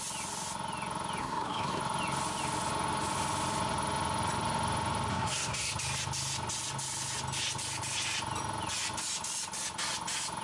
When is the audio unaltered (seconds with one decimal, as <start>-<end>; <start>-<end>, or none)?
0.0-1.2; 1.8-5.1; 5.7-10.4